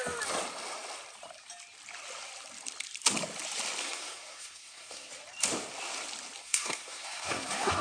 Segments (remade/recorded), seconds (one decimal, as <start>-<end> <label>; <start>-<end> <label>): 0.0-3.8 recorded; 3.8-5.1 remade; 5.1-6.4 recorded; 6.4-7.8 remade